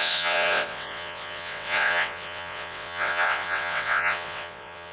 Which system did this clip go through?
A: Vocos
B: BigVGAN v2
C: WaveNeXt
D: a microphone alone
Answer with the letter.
C